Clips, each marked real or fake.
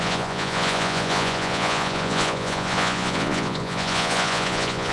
fake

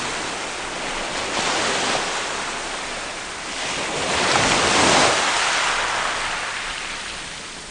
real